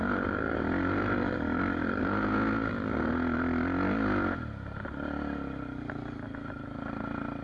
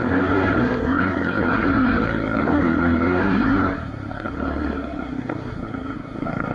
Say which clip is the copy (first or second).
second